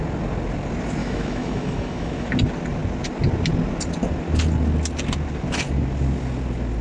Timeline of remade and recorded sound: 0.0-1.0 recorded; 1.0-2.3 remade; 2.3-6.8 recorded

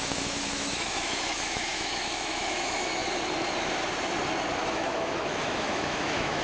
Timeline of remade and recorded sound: 0.0-3.0 remade; 3.0-4.7 recorded; 4.7-6.4 remade

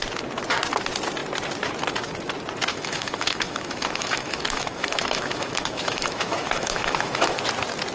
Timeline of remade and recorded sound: 0.0-2.7 recorded; 2.7-7.4 remade; 7.4-7.9 recorded

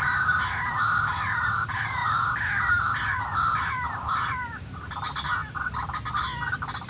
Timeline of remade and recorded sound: 0.0-6.9 recorded

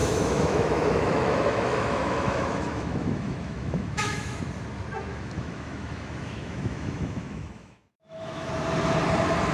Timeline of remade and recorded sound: 0.0-4.4 remade; 4.4-5.1 recorded; 5.1-8.5 remade; 8.5-9.5 recorded

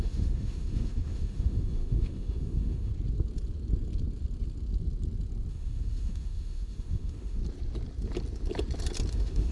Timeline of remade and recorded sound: 0.0-2.9 remade; 2.9-5.5 recorded; 5.5-7.4 remade; 7.4-9.1 recorded; 9.1-9.5 remade

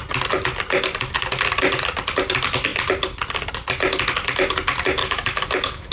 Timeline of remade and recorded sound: 0.0-5.0 recorded; 5.0-5.9 remade

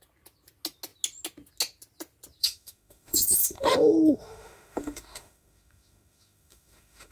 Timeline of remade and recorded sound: 0.0-2.4 recorded; 2.4-7.1 remade